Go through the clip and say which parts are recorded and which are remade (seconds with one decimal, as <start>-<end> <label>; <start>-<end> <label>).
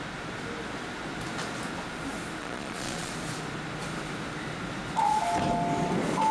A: 0.0-2.4 recorded; 2.4-3.1 remade; 3.1-6.3 recorded